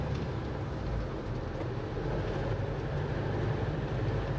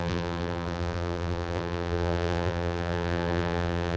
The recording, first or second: first